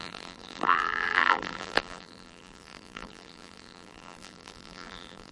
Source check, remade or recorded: remade